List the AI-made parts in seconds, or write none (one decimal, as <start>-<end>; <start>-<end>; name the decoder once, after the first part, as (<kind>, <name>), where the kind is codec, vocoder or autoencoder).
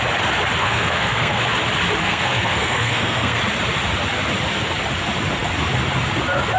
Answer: 0.6-1.4 (codec, SNAC); 2.0-3.4